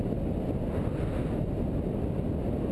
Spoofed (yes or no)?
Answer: no